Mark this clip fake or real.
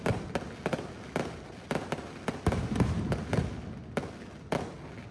real